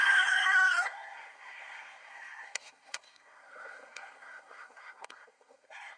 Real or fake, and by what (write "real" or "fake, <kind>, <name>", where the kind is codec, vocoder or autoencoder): fake, codec, SNAC